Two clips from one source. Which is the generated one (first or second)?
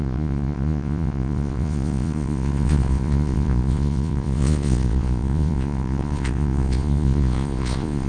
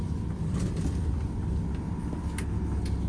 first